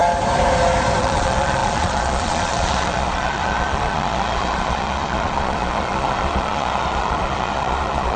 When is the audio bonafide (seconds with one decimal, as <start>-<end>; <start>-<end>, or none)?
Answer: 0.0-1.0